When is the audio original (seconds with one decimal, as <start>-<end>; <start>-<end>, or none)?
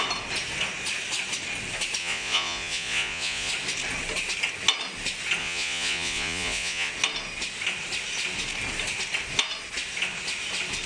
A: 0.0-2.0; 3.5-5.4; 6.9-10.9